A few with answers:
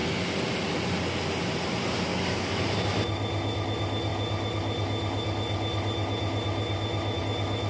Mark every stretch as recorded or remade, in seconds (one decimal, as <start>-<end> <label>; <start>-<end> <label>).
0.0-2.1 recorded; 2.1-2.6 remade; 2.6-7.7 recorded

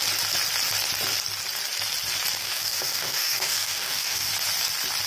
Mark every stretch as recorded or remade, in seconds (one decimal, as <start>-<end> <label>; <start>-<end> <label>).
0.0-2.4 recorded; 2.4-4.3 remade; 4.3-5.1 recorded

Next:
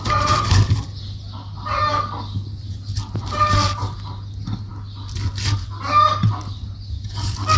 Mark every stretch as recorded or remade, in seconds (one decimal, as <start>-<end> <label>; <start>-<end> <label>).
0.0-1.9 recorded; 1.9-2.6 remade; 2.6-7.6 recorded

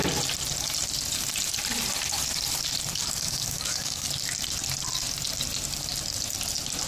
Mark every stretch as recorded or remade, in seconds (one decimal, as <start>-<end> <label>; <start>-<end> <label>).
0.0-3.0 recorded; 3.0-4.1 remade; 4.1-6.9 recorded